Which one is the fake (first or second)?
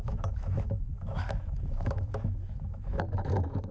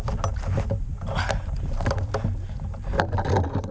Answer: first